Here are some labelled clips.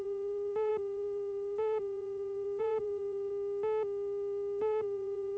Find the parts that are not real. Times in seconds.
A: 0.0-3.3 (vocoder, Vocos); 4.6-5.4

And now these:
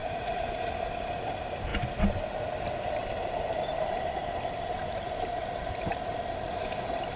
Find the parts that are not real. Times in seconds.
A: 0.0-0.7 (vocoder, Vocos)